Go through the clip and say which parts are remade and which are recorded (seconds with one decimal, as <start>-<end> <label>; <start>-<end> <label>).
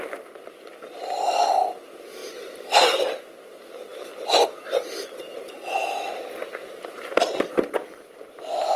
0.0-6.6 recorded; 6.6-7.1 remade; 7.1-8.8 recorded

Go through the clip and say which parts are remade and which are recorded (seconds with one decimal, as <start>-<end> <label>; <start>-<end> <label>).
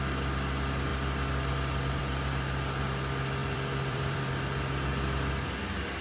0.0-3.4 recorded; 3.4-4.3 remade; 4.3-6.0 recorded